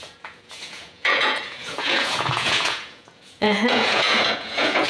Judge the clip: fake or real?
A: fake